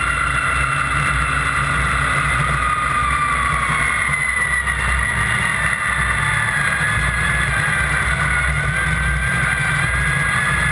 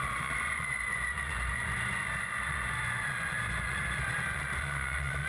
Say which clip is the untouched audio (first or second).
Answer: first